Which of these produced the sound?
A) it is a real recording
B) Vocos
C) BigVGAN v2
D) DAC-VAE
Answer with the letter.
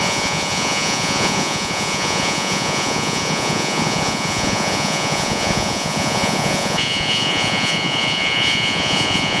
B